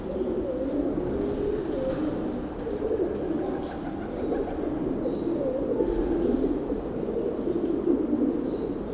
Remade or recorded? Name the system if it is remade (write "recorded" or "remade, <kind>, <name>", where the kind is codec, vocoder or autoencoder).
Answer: recorded